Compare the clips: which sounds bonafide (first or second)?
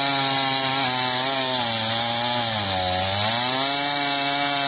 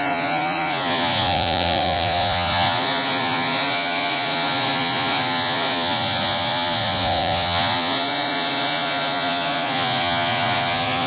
first